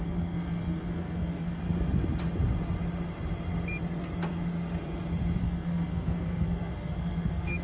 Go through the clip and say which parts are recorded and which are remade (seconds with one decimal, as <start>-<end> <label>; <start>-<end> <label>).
0.0-1.6 remade; 1.6-5.4 recorded; 5.4-7.6 remade